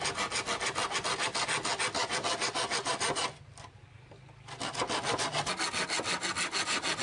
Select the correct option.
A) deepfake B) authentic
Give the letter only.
B